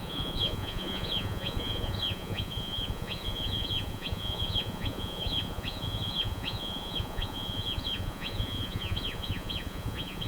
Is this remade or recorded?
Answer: remade